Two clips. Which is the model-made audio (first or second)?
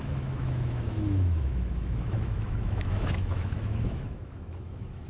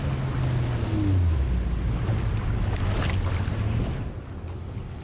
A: first